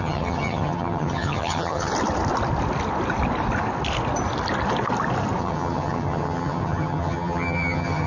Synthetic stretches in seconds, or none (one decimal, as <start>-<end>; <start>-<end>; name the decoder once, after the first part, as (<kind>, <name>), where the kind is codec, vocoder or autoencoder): 0.0-1.9 (vocoder, HiFi-GAN); 5.4-8.1